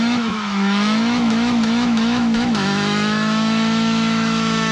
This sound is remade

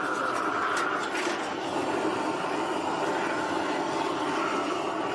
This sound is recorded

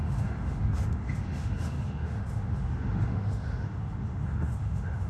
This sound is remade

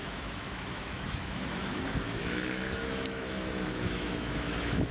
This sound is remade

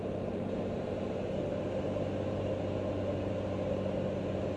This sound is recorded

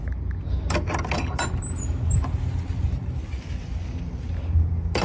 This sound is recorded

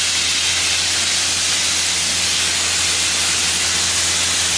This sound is recorded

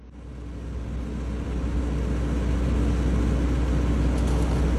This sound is recorded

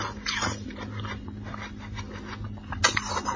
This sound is recorded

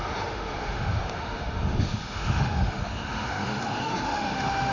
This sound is remade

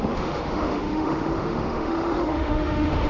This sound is remade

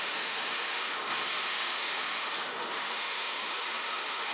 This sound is remade